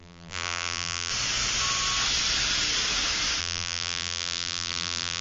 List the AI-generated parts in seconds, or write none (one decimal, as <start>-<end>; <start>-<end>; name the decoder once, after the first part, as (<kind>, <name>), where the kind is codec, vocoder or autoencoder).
0.0-1.1 (vocoder, BigVGAN v2); 3.4-5.2